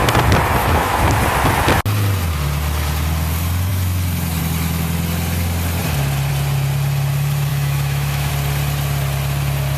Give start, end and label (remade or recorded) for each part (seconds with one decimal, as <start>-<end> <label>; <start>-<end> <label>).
0.0-0.6 recorded; 0.6-1.1 remade; 1.1-7.5 recorded; 7.5-8.3 remade; 8.3-9.8 recorded